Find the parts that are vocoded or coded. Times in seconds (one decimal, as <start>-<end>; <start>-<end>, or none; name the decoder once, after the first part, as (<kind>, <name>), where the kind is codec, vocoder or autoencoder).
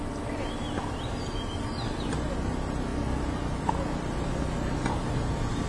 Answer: none